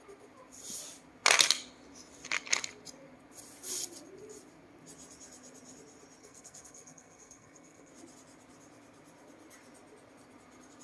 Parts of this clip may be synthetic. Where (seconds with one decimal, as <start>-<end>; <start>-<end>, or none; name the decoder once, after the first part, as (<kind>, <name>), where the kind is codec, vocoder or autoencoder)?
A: 6.2-7.9 (codec, SNAC)